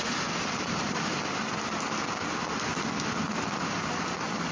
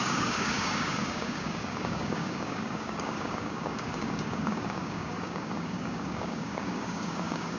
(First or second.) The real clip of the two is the first